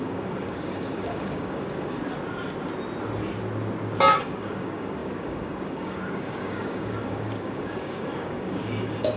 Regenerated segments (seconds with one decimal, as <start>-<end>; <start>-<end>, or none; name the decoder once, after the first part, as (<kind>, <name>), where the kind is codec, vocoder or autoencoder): 0.0-2.0 (codec, DAC); 4.1-9.2